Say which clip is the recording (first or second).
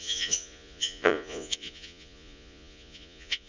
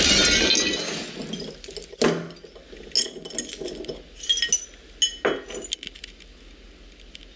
second